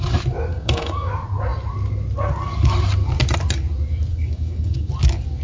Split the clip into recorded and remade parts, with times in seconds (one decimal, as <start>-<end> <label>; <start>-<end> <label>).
0.0-0.5 recorded; 0.5-1.1 remade; 1.1-4.1 recorded; 4.1-4.9 remade; 4.9-5.4 recorded